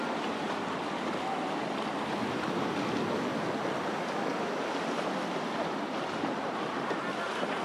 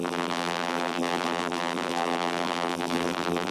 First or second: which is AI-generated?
second